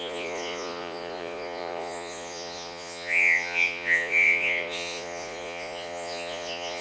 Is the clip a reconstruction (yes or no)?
yes